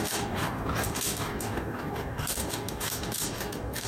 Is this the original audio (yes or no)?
no